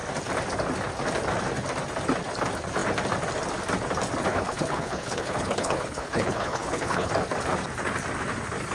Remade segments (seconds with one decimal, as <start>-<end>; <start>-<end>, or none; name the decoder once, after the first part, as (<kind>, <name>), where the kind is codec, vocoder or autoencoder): 4.3-7.1 (codec, HILCodec)